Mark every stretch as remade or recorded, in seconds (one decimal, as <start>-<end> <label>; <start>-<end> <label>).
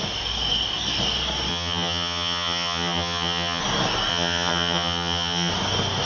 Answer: 0.0-1.5 recorded; 1.5-3.6 remade; 3.6-4.1 recorded; 4.1-5.5 remade; 5.5-6.1 recorded